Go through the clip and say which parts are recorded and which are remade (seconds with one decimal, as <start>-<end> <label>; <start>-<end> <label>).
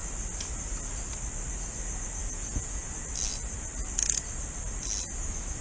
0.0-2.2 recorded; 2.2-2.9 remade; 2.9-5.6 recorded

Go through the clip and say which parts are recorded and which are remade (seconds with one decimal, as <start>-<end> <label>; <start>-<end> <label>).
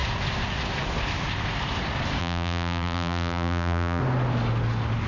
0.0-2.2 recorded; 2.2-4.0 remade; 4.0-5.1 recorded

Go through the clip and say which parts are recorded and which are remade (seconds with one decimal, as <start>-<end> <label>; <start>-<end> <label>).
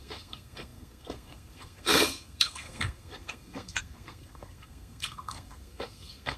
0.0-6.4 remade